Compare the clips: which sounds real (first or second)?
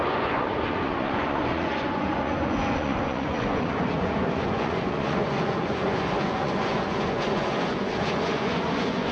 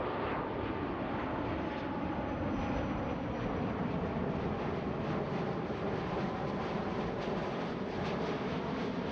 second